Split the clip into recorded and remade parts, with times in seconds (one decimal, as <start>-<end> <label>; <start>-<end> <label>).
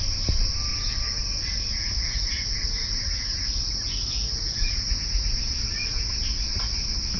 0.0-0.7 recorded; 0.7-1.2 remade; 1.2-1.8 recorded; 1.8-6.1 remade; 6.1-7.2 recorded